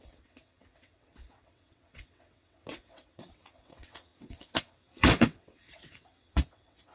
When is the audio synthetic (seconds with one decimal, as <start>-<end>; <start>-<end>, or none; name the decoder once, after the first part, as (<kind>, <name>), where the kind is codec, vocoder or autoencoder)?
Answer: 0.0-6.9 (vocoder, WaveNeXt)